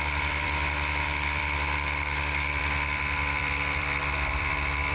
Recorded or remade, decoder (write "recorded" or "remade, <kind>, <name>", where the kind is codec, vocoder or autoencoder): remade, vocoder, BigVGAN v2